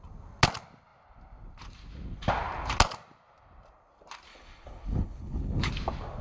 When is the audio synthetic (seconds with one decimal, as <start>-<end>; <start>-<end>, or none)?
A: 4.3-5.7

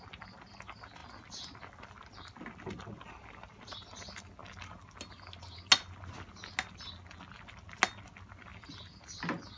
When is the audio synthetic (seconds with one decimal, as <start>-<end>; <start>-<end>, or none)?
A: none

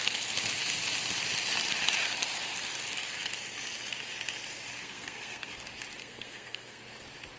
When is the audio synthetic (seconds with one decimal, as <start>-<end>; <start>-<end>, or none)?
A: 4.8-5.5; 6.0-6.8

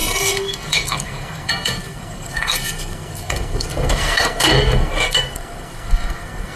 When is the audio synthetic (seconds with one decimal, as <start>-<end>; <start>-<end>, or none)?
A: 0.0-6.6

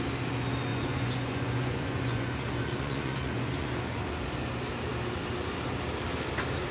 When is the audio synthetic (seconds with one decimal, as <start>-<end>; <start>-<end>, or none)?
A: 0.7-4.0

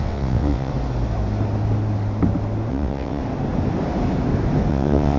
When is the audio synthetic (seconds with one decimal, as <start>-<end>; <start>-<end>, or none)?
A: 0.0-0.7; 2.7-3.2; 4.7-5.2